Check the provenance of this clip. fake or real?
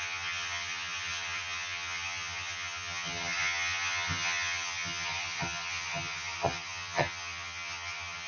fake